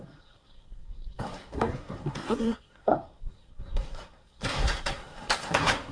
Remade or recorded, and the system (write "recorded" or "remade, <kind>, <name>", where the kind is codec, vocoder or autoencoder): remade, codec, SNAC